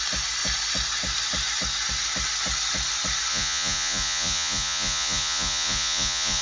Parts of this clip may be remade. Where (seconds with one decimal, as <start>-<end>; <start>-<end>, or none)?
3.3-6.4